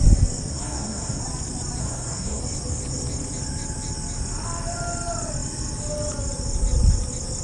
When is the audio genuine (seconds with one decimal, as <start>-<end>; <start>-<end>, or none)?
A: 0.0-0.5; 1.2-1.8; 2.4-7.4